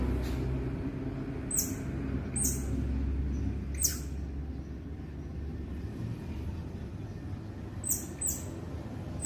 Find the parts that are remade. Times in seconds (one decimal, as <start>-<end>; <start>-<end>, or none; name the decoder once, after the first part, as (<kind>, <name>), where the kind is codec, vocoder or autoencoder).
none